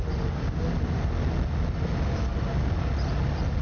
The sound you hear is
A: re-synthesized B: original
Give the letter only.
B